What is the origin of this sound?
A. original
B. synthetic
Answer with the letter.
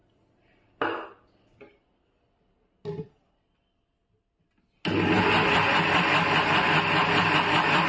A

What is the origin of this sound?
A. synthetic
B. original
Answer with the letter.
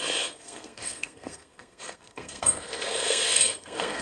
A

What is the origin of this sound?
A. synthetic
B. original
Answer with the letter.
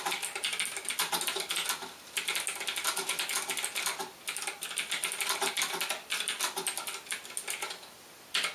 B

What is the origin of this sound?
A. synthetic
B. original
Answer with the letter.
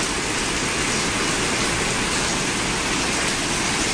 B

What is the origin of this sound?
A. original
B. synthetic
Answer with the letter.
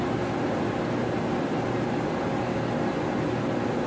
A